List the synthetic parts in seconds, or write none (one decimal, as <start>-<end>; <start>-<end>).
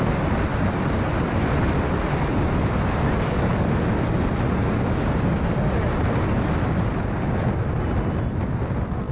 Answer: none